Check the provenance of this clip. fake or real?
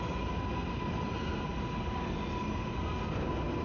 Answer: real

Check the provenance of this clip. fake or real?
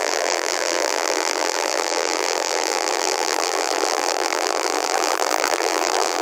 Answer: fake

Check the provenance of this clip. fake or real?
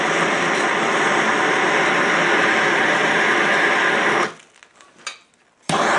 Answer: real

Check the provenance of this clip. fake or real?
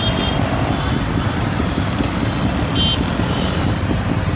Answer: real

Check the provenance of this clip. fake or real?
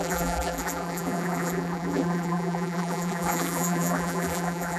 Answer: fake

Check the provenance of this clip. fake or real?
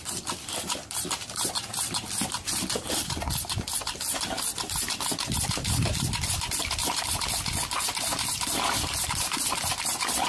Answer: fake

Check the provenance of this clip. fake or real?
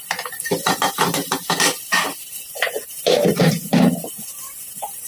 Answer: fake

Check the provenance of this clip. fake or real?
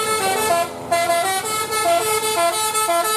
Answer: real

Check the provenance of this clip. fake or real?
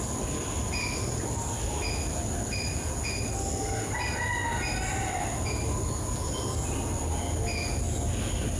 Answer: real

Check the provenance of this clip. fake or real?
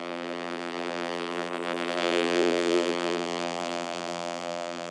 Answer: fake